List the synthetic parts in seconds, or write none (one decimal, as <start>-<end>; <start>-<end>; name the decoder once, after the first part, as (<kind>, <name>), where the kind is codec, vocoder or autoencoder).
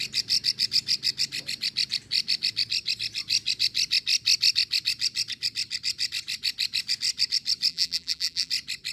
7.7-8.5 (vocoder, BigVGAN v2)